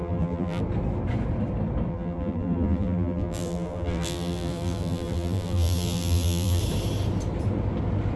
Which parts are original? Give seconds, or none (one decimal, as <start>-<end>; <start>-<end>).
0.6-1.9; 6.6-8.2